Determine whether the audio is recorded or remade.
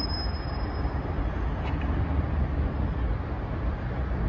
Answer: recorded